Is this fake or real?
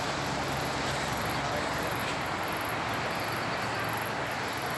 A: real